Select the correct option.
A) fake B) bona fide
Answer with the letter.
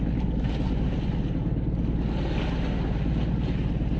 B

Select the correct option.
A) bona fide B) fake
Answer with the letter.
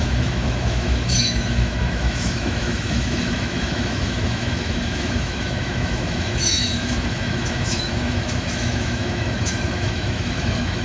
B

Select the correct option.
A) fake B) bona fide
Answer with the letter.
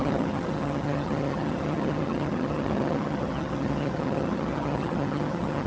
A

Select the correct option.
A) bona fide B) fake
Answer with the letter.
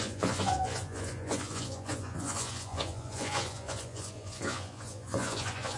B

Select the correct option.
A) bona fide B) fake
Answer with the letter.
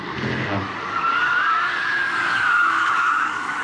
B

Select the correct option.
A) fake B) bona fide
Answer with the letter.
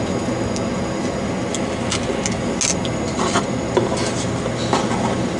B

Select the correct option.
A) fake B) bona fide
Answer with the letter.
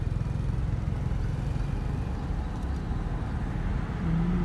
B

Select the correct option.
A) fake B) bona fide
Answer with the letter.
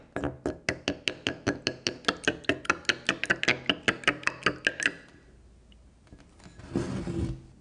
B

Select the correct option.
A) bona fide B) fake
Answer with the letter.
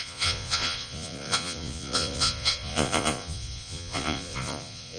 B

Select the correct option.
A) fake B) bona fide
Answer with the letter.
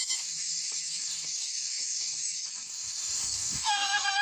A